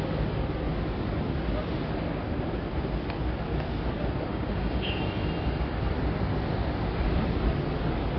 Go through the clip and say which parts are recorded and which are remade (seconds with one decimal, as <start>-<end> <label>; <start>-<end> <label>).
0.0-4.3 recorded; 4.3-5.0 remade; 5.0-8.2 recorded

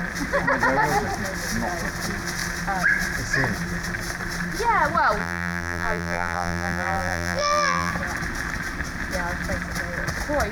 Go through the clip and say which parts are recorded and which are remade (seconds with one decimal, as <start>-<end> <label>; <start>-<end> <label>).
0.0-5.2 recorded; 5.2-7.9 remade; 7.9-10.5 recorded